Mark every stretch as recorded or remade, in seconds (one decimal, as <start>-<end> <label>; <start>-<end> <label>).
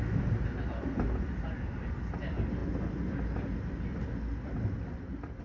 0.0-5.4 recorded